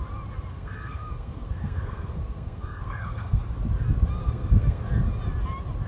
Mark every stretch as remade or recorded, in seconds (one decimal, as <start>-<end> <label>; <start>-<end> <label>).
0.0-0.5 recorded; 0.5-3.4 remade; 3.4-4.2 recorded; 4.2-4.8 remade; 4.8-5.9 recorded